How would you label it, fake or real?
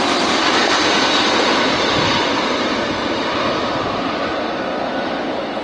real